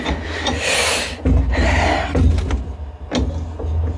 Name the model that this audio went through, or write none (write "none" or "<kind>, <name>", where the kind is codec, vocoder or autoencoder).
none